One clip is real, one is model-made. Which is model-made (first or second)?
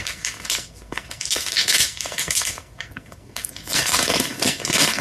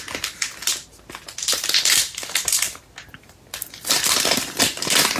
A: first